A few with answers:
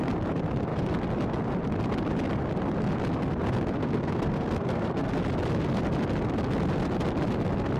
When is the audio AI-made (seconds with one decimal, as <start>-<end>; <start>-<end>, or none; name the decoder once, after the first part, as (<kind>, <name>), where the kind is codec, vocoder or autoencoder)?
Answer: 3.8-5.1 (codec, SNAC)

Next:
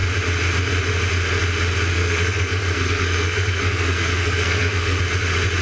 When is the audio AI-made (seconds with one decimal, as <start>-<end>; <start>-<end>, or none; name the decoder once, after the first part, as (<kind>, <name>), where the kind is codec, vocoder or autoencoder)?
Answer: 1.9-5.0 (codec, SNAC)

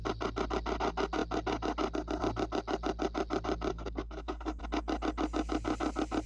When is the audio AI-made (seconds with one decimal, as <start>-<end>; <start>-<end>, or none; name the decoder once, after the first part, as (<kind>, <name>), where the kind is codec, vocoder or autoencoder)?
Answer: 3.7-4.6 (codec, SNAC)

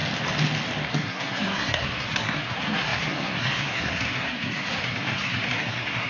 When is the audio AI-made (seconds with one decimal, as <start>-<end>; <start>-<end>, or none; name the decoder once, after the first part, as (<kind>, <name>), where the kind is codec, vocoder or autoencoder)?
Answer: 0.9-6.1 (codec, SNAC)

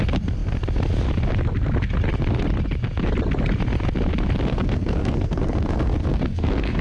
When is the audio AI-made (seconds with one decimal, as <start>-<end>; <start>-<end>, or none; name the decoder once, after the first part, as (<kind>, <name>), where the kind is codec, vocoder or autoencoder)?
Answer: 4.5-6.8 (codec, SNAC)

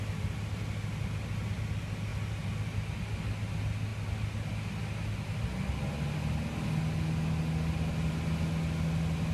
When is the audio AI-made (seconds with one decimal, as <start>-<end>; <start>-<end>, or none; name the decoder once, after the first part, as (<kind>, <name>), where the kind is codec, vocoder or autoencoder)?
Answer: none